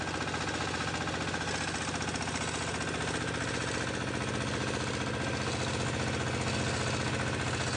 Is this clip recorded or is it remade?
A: recorded